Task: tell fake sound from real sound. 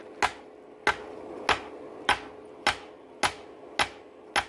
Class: real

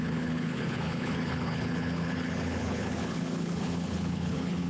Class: fake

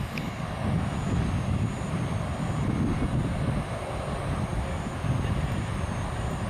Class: real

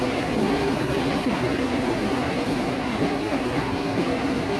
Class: fake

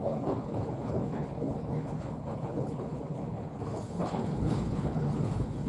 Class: fake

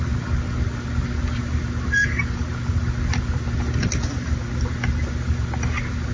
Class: real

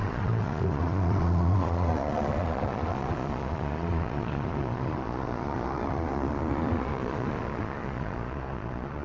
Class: fake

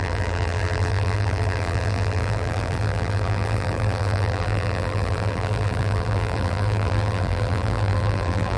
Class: fake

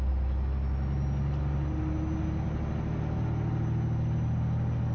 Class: real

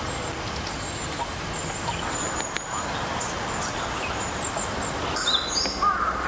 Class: real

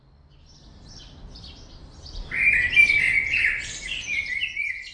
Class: real